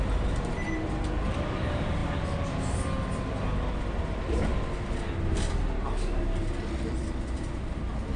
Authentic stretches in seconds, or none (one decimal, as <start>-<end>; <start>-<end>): 0.0-8.2